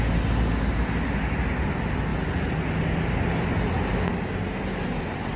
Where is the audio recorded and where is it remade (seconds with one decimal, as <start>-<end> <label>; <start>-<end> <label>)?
0.0-5.4 recorded